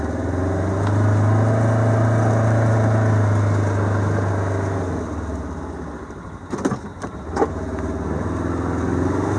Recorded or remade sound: recorded